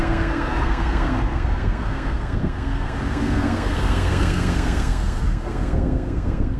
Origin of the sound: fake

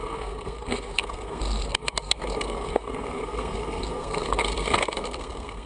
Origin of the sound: fake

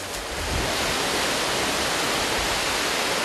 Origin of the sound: real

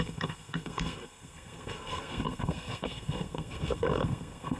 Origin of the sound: fake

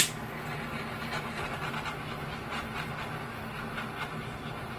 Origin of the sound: real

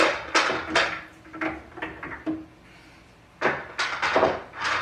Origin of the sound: real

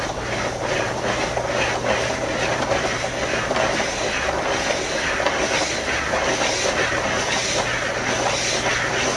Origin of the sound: real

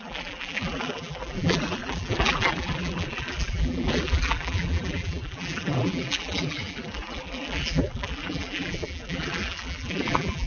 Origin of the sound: fake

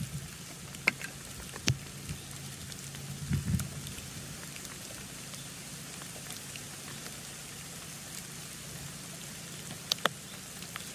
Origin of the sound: real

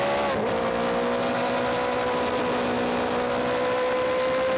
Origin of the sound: real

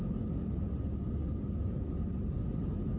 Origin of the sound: real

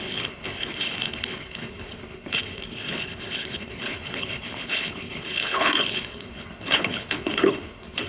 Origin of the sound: fake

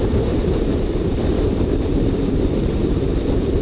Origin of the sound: fake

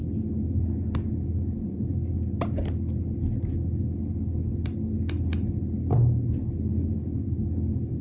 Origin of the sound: real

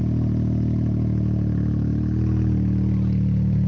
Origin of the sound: real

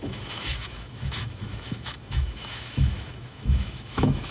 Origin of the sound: fake